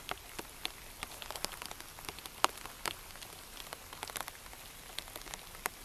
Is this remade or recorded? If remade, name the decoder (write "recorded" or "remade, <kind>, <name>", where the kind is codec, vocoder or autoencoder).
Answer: recorded